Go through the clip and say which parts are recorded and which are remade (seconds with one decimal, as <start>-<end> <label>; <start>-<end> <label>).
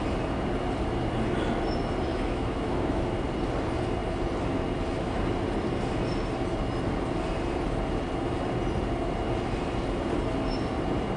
0.0-2.1 recorded; 2.1-3.0 remade; 3.0-11.2 recorded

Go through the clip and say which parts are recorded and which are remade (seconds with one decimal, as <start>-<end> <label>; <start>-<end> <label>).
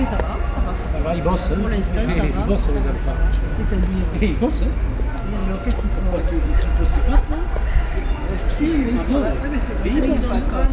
0.0-10.7 recorded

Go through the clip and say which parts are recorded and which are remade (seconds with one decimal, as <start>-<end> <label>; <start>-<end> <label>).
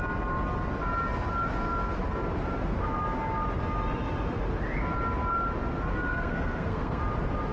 0.0-6.1 recorded; 6.1-7.0 remade; 7.0-7.5 recorded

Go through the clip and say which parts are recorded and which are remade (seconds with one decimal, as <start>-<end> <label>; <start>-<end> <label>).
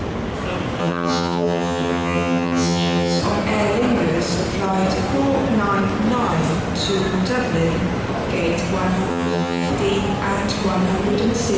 0.0-0.8 recorded; 0.8-3.2 remade; 3.2-9.1 recorded; 9.1-9.7 remade; 9.7-11.6 recorded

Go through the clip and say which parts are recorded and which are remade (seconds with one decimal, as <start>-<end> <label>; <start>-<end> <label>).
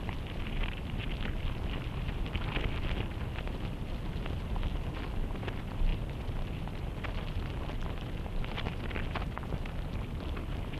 0.0-10.8 recorded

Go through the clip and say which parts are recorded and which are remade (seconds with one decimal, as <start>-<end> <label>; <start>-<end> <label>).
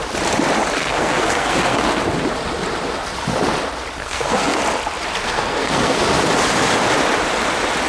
0.0-0.8 recorded; 0.8-2.0 remade; 2.0-4.0 recorded; 4.0-4.6 remade; 4.6-5.2 recorded; 5.2-6.0 remade; 6.0-7.9 recorded